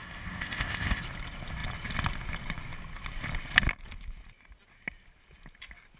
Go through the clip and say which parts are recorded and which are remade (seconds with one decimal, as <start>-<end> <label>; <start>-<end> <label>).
0.0-1.0 remade; 1.0-6.0 recorded